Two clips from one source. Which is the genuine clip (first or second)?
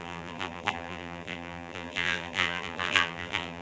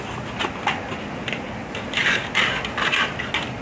second